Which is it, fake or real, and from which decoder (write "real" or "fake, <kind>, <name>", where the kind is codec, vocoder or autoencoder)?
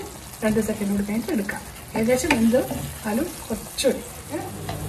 real